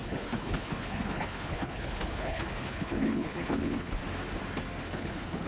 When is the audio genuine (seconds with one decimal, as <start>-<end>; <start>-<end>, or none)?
4.0-4.8